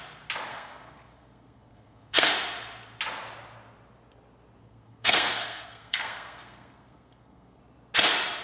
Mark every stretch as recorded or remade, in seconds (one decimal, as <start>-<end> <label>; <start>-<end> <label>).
0.0-0.5 recorded; 0.5-2.3 remade; 2.3-4.6 recorded; 4.6-7.6 remade; 7.6-8.4 recorded